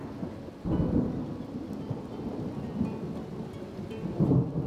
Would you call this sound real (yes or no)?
yes